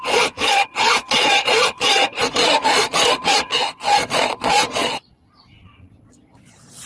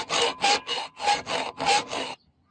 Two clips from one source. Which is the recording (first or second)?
second